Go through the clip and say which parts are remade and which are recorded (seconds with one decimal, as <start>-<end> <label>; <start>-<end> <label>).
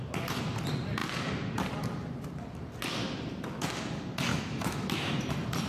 0.0-4.3 recorded; 4.3-5.3 remade; 5.3-5.7 recorded